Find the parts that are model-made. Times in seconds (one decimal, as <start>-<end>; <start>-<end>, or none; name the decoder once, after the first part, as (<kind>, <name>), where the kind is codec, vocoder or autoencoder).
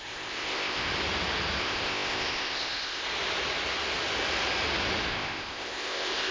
0.0-0.9 (codec, ZipCodec); 1.6-3.1; 5.1-6.3